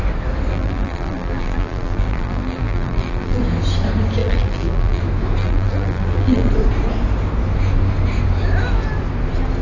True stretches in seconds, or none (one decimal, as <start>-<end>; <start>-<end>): 0.0-0.5; 3.4-4.2; 5.0-5.4; 6.5-9.6